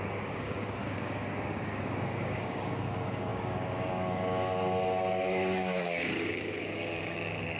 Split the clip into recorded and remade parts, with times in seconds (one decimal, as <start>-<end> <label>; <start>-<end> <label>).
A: 0.0-7.6 remade